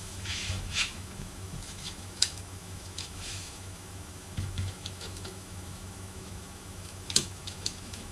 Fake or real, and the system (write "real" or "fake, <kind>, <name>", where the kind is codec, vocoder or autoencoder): fake, autoencoder, DAC-VAE